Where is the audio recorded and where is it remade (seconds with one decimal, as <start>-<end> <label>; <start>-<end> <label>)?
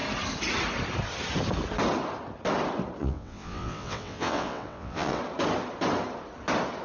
0.0-3.0 recorded; 3.0-5.2 remade; 5.2-6.8 recorded